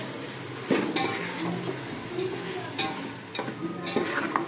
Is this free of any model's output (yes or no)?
yes